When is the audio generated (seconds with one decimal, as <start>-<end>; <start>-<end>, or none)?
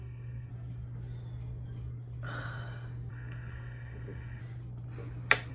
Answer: 0.0-0.5; 3.1-4.4